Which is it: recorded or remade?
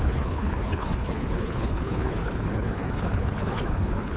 remade